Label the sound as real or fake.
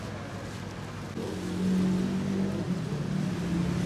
real